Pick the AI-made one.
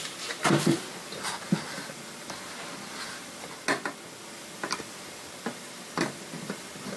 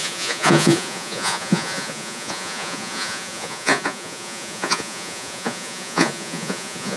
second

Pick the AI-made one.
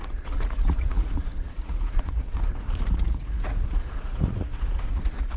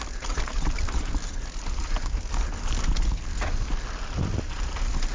first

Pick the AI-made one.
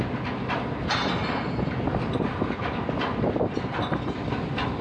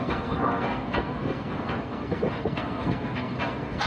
second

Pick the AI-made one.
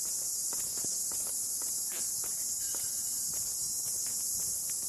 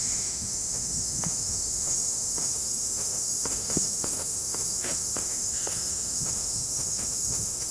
second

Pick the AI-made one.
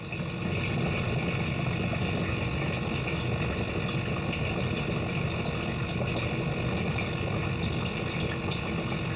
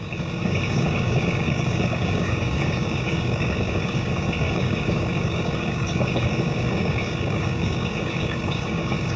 second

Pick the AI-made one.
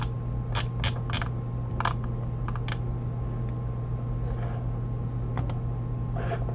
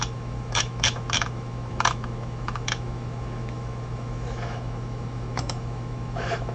second